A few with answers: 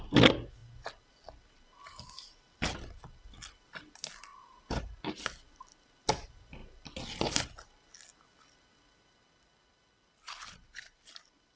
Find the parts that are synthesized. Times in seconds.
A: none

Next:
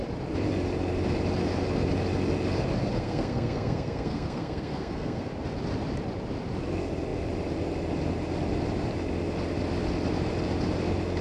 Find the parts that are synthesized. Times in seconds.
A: 2.8-5.3

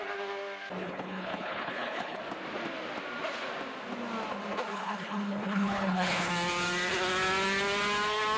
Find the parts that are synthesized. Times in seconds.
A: 0.8-2.2; 4.7-6.3

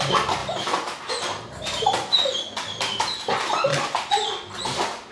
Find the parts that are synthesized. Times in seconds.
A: none

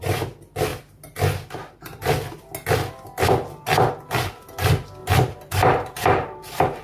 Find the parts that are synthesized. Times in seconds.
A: 5.0-6.8

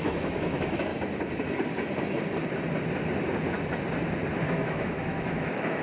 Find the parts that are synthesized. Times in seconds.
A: 0.0-0.9; 4.4-5.8

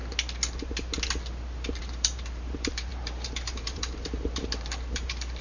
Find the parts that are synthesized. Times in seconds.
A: 1.8-5.4

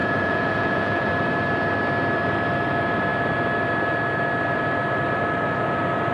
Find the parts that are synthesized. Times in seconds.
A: 0.0-1.1